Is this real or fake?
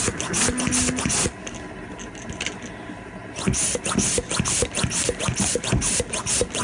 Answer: real